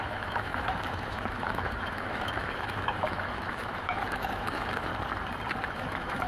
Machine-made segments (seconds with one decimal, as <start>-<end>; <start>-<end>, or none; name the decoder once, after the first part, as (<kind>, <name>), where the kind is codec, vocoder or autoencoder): 0.0-4.9 (autoencoder, DAC-VAE); 5.7-6.3

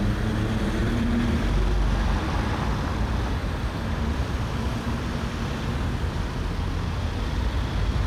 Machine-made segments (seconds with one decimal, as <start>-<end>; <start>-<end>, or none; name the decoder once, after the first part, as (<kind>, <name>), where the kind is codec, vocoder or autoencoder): 0.8-5.7 (vocoder, BigVGAN v2)

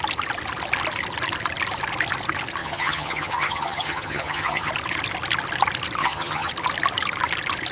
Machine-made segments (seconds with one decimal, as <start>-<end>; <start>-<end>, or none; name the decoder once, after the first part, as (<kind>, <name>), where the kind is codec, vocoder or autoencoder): 2.6-4.7 (vocoder, HiFi-GAN); 6.0-6.5

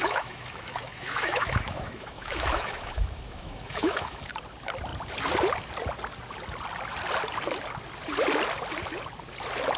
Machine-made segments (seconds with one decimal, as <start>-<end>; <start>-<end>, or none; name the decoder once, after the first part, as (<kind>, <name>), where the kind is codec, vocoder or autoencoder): 0.0-4.3 (autoencoder, DAC-VAE)

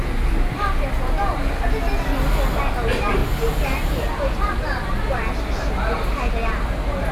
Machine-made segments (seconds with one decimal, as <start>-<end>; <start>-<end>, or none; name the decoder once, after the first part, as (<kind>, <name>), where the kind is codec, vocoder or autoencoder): none

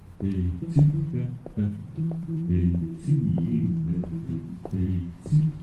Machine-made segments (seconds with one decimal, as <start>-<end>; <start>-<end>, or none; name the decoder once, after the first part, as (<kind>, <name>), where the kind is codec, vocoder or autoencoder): 0.0-0.6 (vocoder, BigVGAN v2); 1.8-5.6

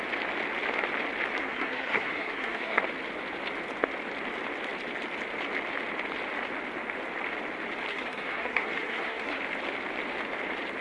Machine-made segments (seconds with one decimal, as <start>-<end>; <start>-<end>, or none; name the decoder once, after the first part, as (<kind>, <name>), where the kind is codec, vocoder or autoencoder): 1.4-2.8 (codec, SNAC); 7.9-9.4

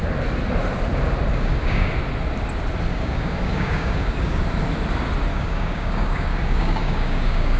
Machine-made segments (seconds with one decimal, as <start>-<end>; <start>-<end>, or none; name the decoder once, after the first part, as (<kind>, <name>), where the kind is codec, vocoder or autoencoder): 1.3-1.9 (codec, DAC); 2.9-4.4; 5.3-7.6